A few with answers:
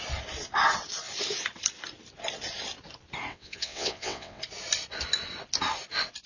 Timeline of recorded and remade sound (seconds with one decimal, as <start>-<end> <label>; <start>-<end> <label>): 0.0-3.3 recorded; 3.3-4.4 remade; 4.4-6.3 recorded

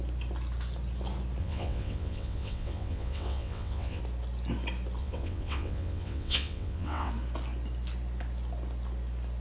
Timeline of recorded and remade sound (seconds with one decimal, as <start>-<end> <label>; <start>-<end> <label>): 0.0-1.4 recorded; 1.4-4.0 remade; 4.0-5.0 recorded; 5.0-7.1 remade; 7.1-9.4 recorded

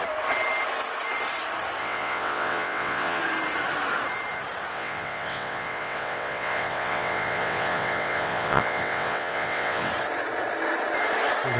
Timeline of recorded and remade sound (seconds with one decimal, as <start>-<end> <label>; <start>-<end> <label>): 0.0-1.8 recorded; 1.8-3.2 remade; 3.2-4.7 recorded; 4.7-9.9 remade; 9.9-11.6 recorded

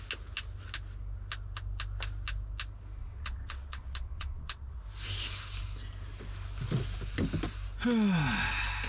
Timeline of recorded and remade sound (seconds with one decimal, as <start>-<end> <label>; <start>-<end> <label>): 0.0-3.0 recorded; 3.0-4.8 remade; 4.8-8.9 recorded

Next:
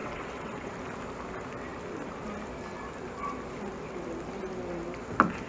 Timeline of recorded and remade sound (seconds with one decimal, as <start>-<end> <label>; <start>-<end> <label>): 0.0-0.7 remade; 0.7-5.5 recorded

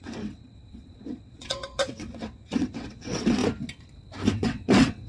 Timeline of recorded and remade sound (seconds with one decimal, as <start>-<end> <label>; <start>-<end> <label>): 0.0-3.4 remade; 3.4-4.3 recorded; 4.3-5.1 remade

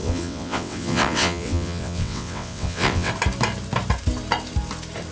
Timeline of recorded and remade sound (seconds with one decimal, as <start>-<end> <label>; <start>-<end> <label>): 0.0-3.1 remade; 3.1-5.1 recorded

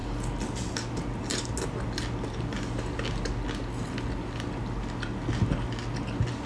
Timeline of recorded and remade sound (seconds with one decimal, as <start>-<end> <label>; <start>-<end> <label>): 0.0-6.5 recorded